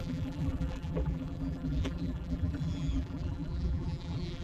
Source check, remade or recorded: remade